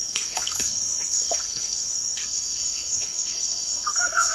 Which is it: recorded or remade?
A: remade